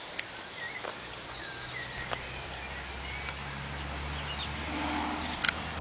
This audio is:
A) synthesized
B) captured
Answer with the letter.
B